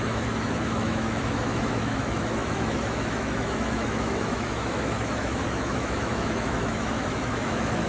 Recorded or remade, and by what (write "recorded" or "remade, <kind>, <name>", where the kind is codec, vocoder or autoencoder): remade, autoencoder, DAC-VAE